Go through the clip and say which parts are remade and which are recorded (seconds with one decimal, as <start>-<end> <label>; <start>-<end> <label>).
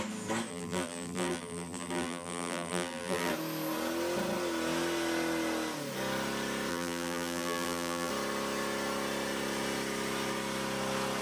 0.0-0.5 recorded; 0.5-3.3 remade; 3.3-6.7 recorded; 6.7-8.1 remade; 8.1-11.2 recorded